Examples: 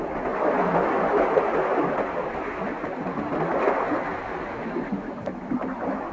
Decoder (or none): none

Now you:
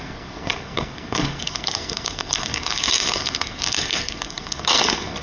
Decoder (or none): codec, SNAC